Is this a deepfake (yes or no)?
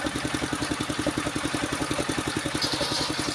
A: yes